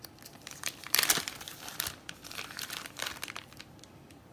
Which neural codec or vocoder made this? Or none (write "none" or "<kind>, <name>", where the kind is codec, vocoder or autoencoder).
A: vocoder, BigVGAN v2